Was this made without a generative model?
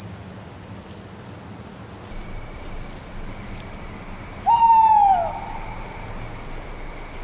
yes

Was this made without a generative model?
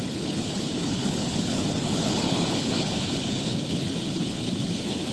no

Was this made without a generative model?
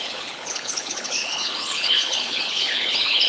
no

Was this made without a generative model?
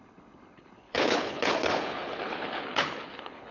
no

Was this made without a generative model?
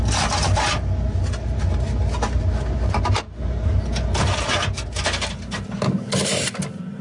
yes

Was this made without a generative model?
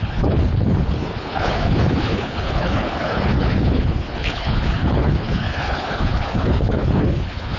no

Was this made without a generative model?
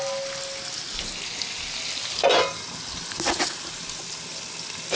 yes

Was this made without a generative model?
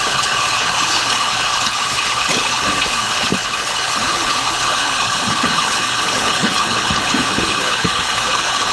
no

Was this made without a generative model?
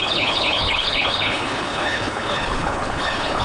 no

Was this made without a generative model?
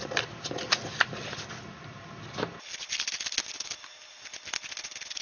yes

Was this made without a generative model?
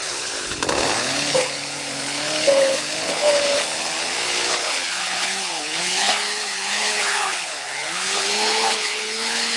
no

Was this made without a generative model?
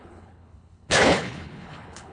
no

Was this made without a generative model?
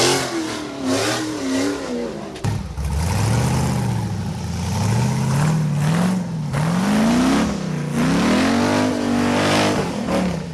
yes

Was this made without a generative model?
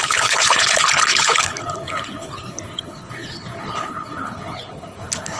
no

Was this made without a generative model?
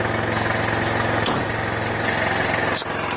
yes